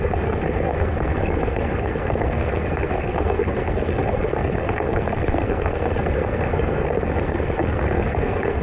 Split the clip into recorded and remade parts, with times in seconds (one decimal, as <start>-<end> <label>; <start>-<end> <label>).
0.0-8.6 remade